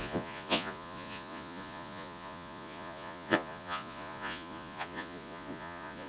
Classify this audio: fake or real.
fake